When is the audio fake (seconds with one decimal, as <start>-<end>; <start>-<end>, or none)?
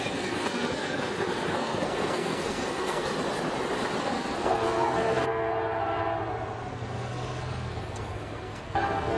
0.0-3.1; 4.0-5.5; 6.7-9.2